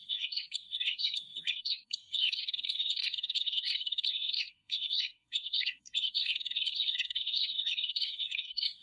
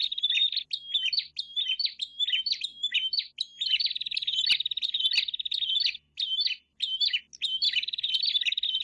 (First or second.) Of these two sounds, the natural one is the second